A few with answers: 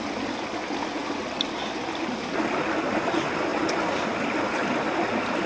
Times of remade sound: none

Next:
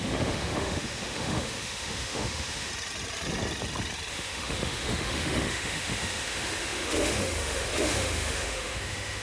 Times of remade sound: 0.0-2.7 (autoencoder, DAC-VAE); 4.1-9.2

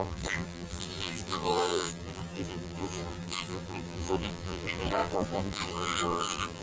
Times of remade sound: 0.0-6.6 (vocoder, BigVGAN v2)

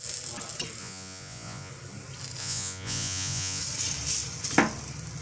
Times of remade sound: 0.8-1.7 (vocoder, Vocos); 2.4-3.6

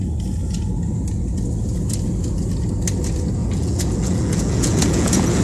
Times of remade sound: 3.4-5.4 (vocoder, Vocos)

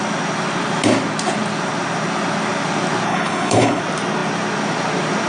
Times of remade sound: 3.1-3.8 (codec, HILCodec)